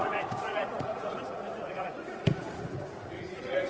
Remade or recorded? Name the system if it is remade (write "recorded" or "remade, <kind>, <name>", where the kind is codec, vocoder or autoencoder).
remade, vocoder, Vocos